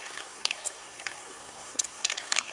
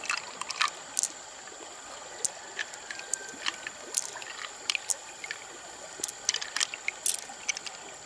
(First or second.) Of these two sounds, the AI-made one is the first